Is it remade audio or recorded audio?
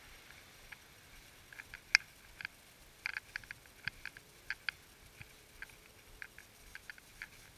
recorded